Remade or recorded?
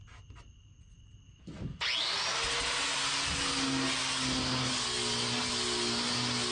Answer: recorded